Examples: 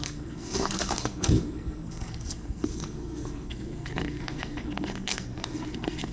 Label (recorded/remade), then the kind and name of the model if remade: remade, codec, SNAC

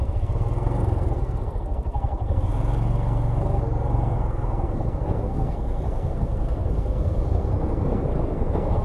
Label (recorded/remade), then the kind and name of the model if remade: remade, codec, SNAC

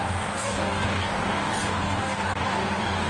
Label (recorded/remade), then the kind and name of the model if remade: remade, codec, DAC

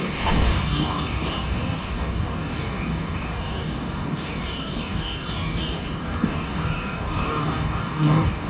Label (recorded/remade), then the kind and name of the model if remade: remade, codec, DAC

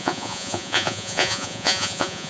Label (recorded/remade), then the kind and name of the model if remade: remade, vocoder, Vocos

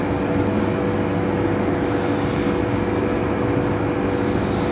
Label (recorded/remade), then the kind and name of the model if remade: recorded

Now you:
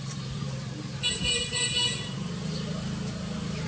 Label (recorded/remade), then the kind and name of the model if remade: remade, vocoder, BigVGAN v2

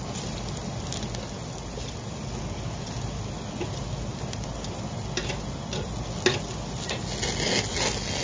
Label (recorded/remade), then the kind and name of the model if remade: recorded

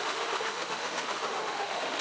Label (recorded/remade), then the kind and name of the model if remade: remade, autoencoder, DAC-VAE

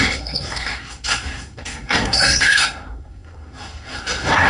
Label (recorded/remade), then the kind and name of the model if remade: remade, codec, SNAC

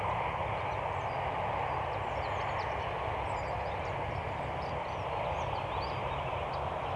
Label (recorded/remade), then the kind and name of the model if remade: recorded